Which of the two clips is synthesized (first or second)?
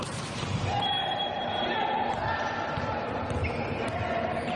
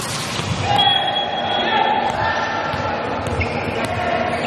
first